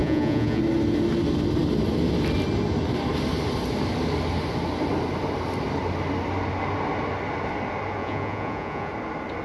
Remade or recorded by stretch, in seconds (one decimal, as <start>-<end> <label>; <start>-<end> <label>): 0.0-0.6 remade; 0.6-8.0 recorded; 8.0-8.9 remade; 8.9-9.4 recorded